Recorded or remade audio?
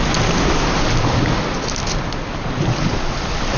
recorded